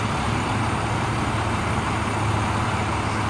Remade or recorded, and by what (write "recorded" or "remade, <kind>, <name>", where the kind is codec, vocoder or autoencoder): recorded